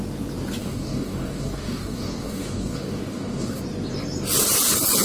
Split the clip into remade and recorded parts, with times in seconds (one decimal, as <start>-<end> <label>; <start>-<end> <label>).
0.0-0.6 recorded; 0.6-3.6 remade; 3.6-5.0 recorded